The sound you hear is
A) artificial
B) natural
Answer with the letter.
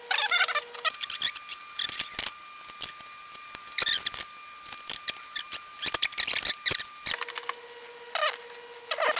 B